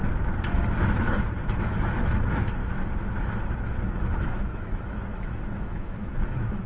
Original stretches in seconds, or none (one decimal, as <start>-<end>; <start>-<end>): 0.0-0.8; 2.6-3.6